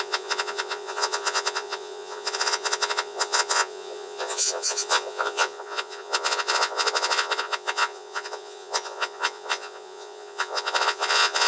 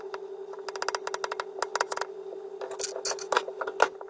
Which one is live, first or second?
second